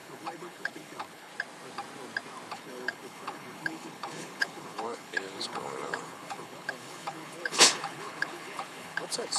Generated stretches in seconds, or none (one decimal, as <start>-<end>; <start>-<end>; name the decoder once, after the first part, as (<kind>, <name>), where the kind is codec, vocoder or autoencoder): 0.0-1.3 (codec, HILCodec); 2.5-9.4